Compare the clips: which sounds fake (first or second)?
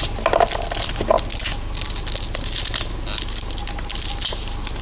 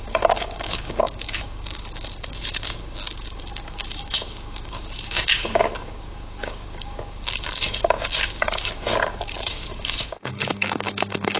second